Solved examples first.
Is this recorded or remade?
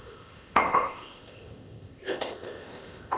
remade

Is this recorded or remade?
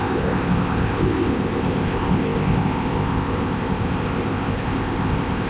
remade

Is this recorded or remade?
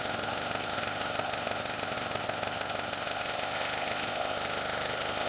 remade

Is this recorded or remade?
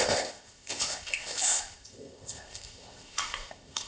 remade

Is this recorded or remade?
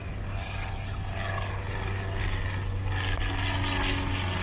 recorded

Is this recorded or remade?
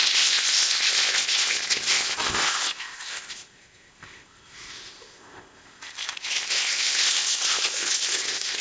remade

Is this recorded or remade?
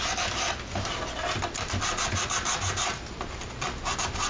recorded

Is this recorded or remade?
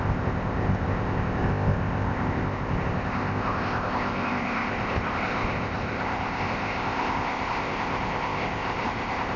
remade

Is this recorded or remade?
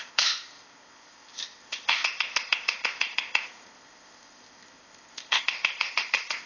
remade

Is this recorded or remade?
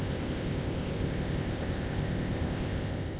remade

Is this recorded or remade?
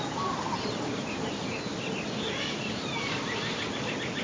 recorded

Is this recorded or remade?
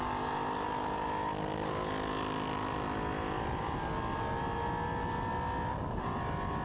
recorded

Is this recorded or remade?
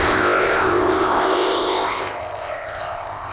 remade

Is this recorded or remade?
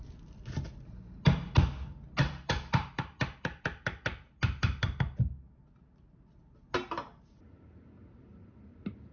recorded